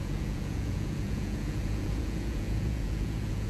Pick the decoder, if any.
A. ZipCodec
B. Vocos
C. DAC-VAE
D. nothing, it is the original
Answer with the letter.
B